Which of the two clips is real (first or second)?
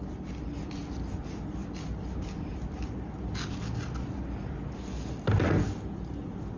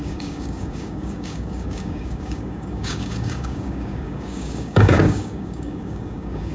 first